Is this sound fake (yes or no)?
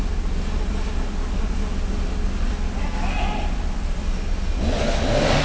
no